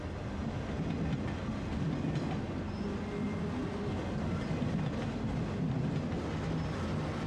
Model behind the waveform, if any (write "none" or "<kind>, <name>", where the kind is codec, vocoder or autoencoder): none